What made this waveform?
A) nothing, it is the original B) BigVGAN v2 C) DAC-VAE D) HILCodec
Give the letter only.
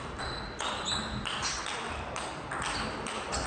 A